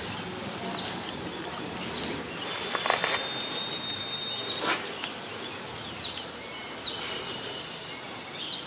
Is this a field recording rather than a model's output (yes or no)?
yes